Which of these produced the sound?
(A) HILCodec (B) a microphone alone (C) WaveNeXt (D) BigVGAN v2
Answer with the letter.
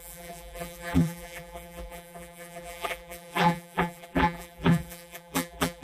D